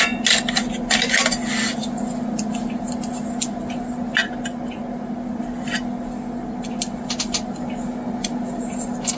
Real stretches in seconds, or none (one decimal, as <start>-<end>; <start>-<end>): 0.0-9.2